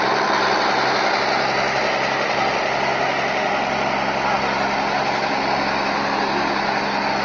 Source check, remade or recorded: recorded